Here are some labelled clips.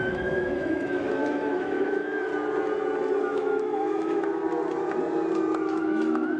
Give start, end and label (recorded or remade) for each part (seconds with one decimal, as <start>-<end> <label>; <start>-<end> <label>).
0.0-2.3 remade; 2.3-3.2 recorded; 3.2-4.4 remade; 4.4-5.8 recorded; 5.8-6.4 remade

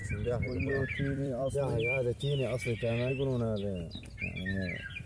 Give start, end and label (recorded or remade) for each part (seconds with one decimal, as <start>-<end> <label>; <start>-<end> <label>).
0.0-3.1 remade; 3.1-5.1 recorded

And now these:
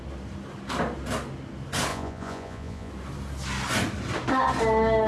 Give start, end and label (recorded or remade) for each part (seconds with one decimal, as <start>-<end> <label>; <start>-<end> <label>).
0.0-1.9 recorded; 1.9-2.9 remade; 2.9-5.1 recorded

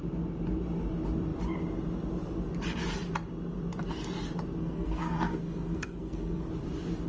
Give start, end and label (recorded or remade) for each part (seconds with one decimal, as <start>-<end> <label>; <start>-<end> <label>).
0.0-4.6 recorded; 4.6-6.5 remade; 6.5-7.1 recorded

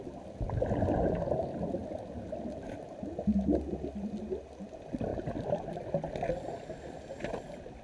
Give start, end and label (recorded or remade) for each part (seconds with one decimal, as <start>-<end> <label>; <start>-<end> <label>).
0.0-7.8 recorded

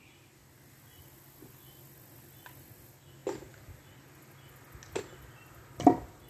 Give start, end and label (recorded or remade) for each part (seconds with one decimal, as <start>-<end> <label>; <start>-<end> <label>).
0.0-6.3 recorded

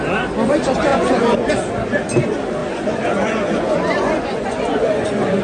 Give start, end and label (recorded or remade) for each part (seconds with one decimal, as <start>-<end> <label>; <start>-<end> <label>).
0.0-0.9 recorded; 0.9-1.5 remade; 1.5-2.6 recorded; 2.6-5.4 remade